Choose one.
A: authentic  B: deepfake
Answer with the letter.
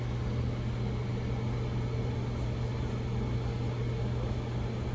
A